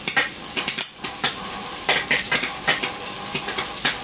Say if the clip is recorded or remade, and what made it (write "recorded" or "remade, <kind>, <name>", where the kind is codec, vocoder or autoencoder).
recorded